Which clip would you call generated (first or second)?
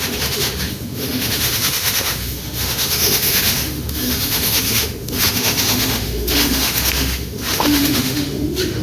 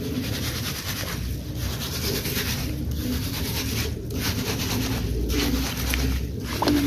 first